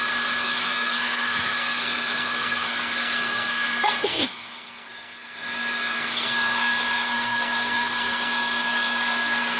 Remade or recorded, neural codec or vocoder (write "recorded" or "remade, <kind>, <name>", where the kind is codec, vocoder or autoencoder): remade, codec, SNAC